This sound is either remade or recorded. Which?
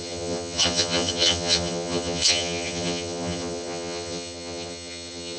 remade